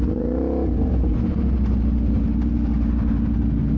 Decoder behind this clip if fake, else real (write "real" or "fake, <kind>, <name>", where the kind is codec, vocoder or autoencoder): real